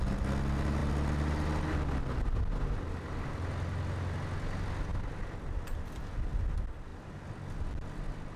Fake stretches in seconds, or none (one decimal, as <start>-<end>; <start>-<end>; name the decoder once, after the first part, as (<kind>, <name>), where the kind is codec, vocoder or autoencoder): none